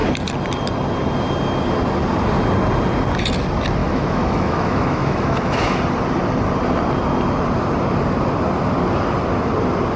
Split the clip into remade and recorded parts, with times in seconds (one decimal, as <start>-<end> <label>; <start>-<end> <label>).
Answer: 0.0-3.8 recorded; 3.8-5.8 remade; 5.8-10.0 recorded